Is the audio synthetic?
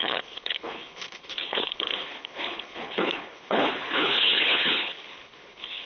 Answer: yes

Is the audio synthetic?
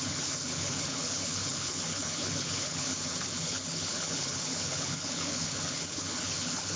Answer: yes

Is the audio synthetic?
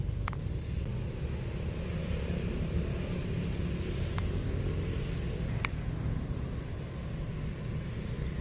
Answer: no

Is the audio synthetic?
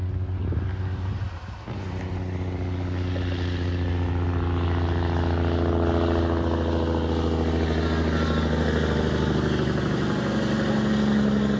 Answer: no